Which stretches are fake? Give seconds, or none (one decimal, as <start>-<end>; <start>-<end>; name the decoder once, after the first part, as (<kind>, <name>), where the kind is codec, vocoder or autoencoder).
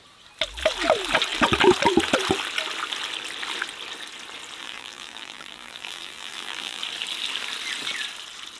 4.6-6.8 (vocoder, BigVGAN v2)